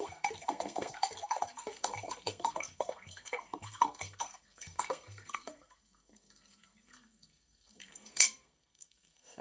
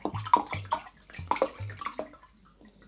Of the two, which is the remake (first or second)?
first